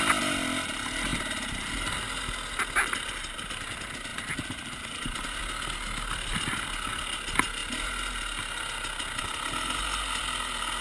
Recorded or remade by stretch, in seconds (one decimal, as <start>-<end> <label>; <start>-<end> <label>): 0.0-4.1 recorded; 4.1-5.4 remade; 5.4-10.8 recorded